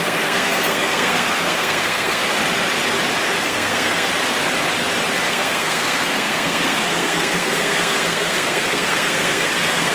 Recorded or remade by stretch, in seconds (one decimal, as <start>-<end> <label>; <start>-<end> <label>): 0.0-2.2 remade; 2.2-3.4 recorded; 3.4-4.1 remade; 4.1-5.3 recorded; 5.3-9.9 remade